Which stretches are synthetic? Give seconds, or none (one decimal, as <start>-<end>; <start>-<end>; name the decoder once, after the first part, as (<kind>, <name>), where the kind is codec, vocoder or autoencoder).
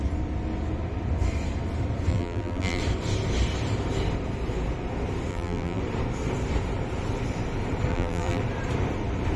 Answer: 2.1-2.8 (vocoder, BigVGAN v2); 5.3-5.8; 7.9-8.4